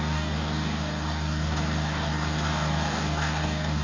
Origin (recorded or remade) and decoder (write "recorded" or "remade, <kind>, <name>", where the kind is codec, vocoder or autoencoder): remade, codec, DAC